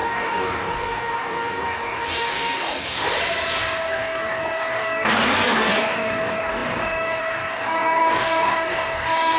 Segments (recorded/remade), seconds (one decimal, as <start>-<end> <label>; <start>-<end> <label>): 0.0-3.0 remade; 3.0-3.6 recorded; 3.6-9.4 remade